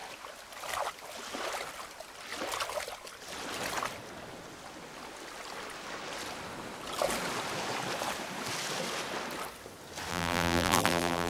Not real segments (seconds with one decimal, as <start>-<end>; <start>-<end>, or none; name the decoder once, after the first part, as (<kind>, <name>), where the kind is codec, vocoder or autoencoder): 10.1-11.3 (vocoder, BigVGAN v2)

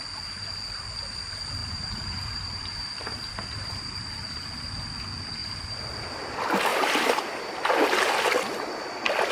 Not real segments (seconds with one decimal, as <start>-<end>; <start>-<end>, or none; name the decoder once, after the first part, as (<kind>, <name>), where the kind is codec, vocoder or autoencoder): 1.6-4.0 (vocoder, BigVGAN v2); 6.7-8.0

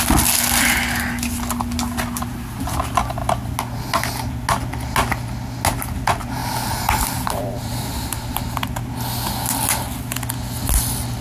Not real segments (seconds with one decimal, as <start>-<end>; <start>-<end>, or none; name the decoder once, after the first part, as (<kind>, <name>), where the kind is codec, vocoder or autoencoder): 6.4-8.6 (vocoder, BigVGAN v2)

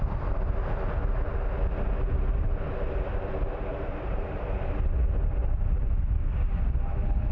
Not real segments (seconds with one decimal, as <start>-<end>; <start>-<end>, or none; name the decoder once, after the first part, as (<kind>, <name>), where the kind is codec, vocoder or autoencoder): 3.3-4.4 (vocoder, BigVGAN v2); 5.4-5.9